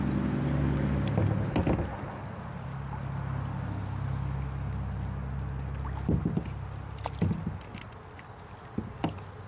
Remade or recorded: recorded